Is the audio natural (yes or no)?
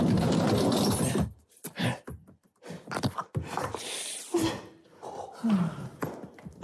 yes